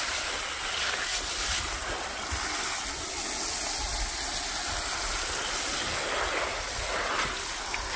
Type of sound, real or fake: real